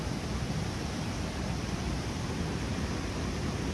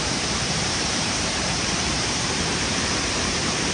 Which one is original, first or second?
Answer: first